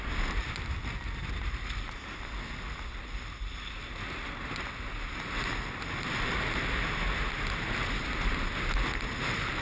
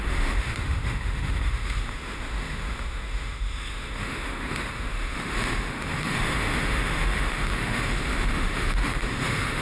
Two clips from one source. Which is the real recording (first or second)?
first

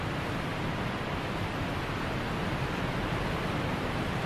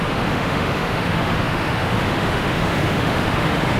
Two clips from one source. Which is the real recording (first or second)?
first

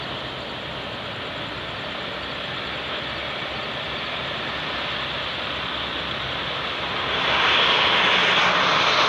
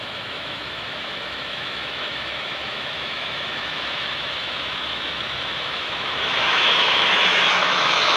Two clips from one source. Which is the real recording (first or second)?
first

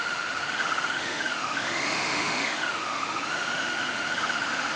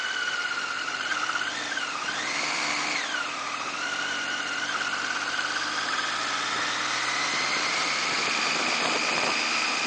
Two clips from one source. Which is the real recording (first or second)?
second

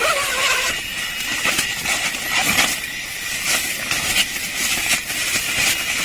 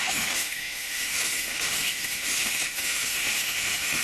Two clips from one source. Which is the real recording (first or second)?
first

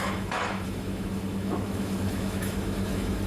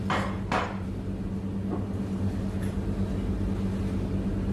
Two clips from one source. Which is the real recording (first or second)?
second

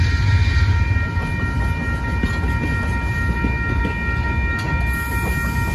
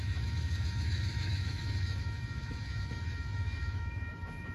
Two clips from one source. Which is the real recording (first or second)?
first